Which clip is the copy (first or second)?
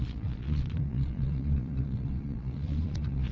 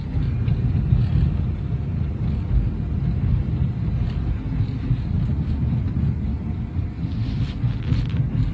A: first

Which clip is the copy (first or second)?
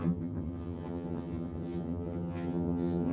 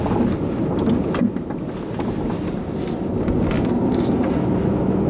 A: first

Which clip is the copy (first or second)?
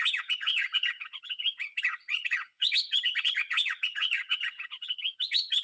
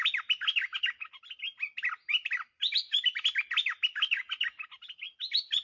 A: first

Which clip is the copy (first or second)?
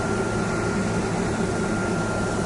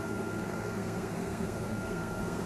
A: second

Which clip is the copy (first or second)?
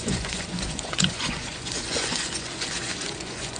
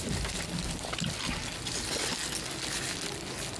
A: first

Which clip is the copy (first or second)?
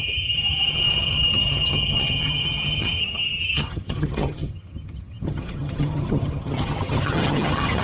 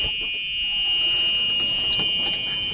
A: first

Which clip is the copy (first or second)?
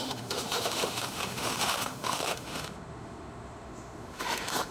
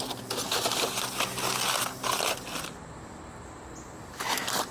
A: first